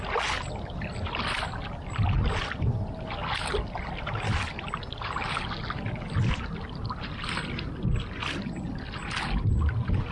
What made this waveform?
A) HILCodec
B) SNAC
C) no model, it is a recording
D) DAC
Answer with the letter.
C